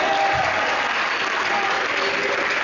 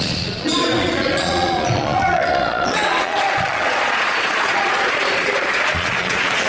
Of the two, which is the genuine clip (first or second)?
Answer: first